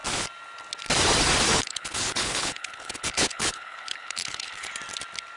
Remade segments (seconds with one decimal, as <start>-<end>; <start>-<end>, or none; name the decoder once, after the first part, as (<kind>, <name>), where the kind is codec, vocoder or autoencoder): 1.5-4.7 (codec, HILCodec)